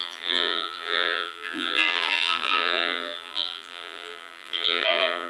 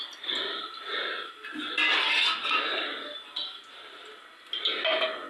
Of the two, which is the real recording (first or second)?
second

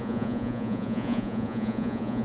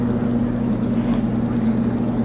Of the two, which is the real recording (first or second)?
second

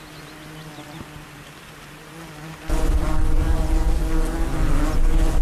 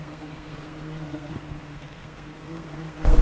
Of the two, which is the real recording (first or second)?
first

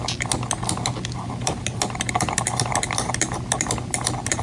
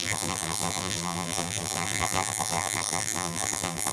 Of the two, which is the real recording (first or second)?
first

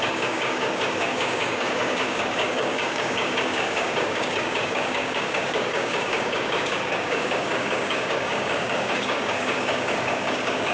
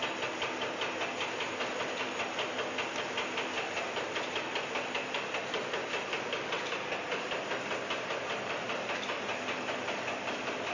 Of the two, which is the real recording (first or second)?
second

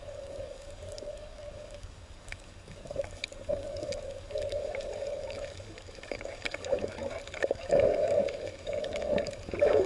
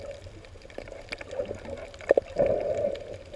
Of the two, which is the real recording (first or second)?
second